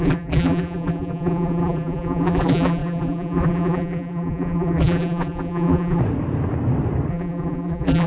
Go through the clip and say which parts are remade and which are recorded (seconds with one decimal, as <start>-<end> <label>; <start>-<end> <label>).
0.0-6.0 remade; 6.0-7.1 recorded; 7.1-8.1 remade